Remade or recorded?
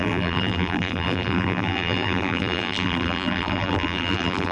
remade